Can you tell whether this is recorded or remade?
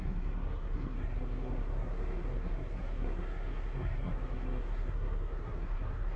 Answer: remade